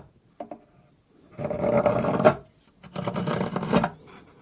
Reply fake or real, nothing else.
real